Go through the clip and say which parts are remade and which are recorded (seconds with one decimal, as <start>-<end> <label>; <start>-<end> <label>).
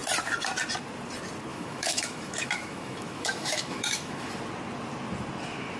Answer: 0.0-1.5 recorded; 1.5-4.3 remade; 4.3-5.8 recorded